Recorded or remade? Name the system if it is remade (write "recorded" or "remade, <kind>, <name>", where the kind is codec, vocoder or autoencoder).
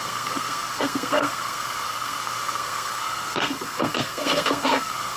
remade, codec, SNAC